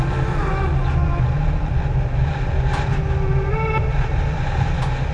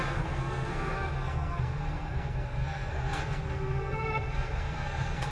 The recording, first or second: first